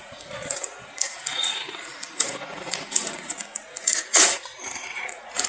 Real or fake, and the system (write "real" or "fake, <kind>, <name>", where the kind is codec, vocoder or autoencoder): fake, vocoder, Vocos